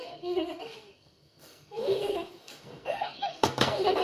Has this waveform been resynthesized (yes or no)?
yes